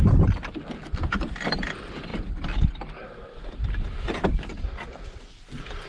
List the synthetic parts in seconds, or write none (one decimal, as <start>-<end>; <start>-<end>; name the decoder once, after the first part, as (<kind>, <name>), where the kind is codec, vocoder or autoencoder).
none